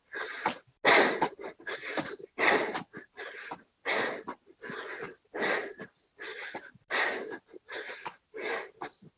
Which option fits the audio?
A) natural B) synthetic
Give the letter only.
A